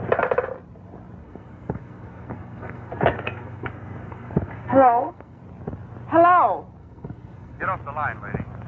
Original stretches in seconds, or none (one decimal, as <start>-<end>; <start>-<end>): 0.0-1.2; 5.4-6.8; 7.6-8.7